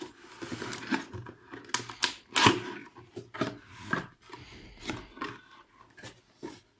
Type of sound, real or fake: real